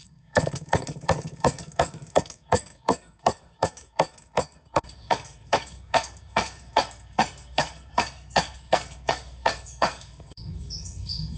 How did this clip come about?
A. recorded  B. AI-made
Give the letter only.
B